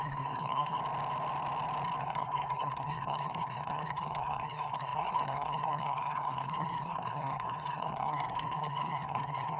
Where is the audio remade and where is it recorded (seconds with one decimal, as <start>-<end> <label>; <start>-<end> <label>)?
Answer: 0.0-0.8 remade; 0.8-2.0 recorded; 2.0-9.6 remade